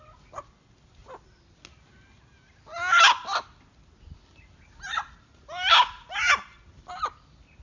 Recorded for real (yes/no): yes